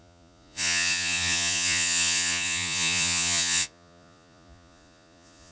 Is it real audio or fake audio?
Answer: fake